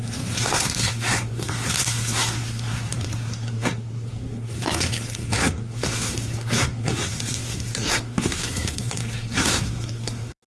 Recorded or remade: remade